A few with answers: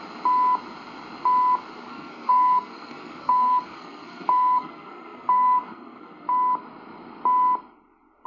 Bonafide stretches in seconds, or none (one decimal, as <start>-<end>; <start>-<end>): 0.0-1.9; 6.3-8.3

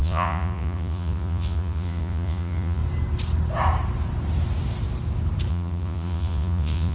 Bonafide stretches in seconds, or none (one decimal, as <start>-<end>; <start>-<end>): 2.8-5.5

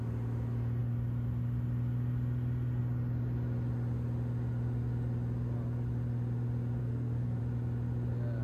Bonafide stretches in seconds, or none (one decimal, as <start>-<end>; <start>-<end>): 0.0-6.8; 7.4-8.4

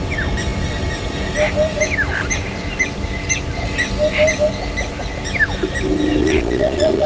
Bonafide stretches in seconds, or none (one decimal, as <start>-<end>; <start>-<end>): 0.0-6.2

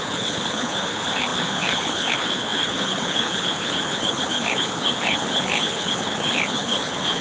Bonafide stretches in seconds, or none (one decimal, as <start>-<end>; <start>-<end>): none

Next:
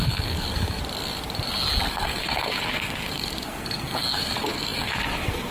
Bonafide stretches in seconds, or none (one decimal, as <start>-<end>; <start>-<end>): 0.8-1.9

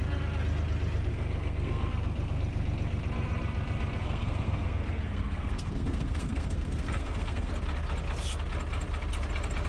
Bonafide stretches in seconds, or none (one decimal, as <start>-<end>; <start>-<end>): 0.0-1.1; 1.9-4.0; 7.5-9.7